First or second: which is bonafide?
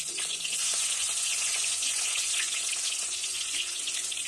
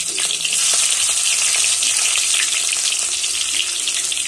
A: second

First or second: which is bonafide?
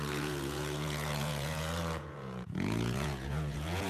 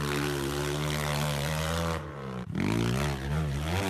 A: second